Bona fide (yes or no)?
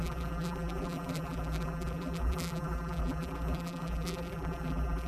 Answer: no